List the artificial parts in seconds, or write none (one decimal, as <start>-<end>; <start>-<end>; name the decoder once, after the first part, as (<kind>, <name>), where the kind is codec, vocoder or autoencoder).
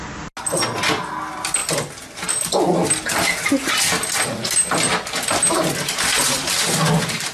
none